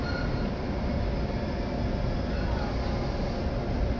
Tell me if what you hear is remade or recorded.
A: recorded